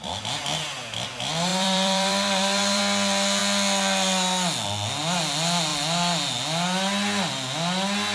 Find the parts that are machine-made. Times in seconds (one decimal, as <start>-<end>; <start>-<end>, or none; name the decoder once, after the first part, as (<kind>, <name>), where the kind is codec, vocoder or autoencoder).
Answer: 1.5-2.8 (vocoder, BigVGAN v2)